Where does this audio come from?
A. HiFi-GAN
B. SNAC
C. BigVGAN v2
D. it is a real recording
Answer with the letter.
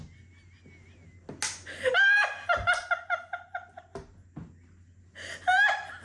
D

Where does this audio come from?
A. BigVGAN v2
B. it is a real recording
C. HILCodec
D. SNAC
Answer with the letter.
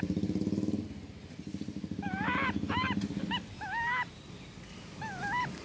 B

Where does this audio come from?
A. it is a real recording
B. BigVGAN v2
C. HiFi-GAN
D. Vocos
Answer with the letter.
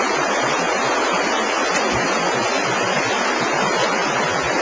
A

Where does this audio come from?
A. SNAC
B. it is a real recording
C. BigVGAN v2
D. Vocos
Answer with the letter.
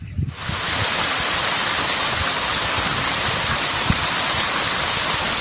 B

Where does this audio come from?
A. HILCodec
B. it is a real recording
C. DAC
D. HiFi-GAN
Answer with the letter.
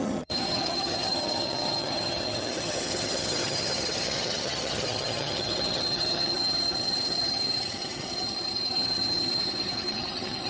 D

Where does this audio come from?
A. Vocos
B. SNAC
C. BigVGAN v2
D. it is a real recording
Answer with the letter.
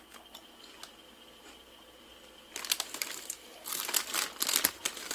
D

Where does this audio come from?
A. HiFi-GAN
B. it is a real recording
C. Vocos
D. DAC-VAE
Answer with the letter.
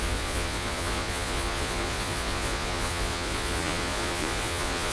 C